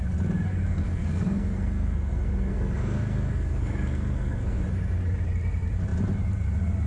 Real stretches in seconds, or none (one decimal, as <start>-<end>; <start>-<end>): 0.0-0.5; 4.6-6.9